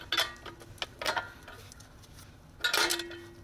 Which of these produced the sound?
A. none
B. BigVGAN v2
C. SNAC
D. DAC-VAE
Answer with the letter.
A